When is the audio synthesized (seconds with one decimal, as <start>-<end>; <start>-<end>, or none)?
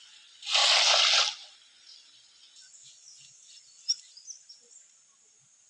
none